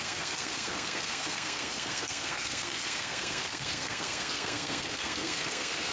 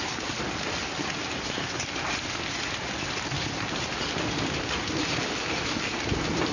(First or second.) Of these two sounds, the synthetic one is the first